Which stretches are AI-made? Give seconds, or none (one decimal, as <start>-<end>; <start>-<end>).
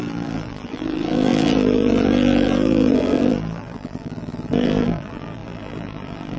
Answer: 0.0-6.4